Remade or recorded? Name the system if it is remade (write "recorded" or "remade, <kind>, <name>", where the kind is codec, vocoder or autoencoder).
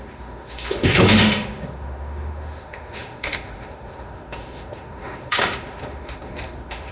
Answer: remade, autoencoder, DAC-VAE